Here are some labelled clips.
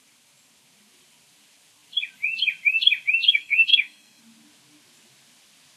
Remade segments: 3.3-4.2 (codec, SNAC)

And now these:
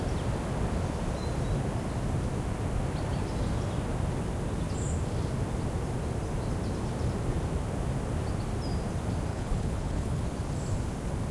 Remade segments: 9.3-10.2 (codec, HILCodec)

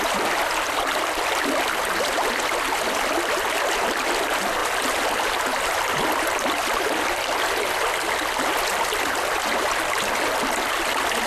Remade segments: none